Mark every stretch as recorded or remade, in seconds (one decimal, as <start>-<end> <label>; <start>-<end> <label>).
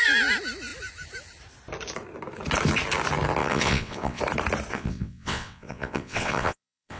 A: 0.0-3.4 recorded; 3.4-4.2 remade; 4.2-4.7 recorded; 4.7-7.0 remade